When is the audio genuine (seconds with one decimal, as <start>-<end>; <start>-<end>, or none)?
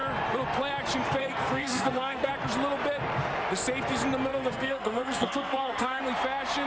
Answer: 0.0-1.2; 2.3-4.3; 6.0-6.7